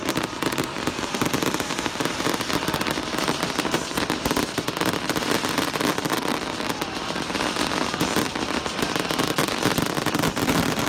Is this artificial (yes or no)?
yes